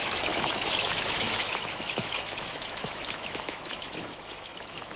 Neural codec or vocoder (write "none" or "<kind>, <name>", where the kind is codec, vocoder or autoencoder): autoencoder, DAC-VAE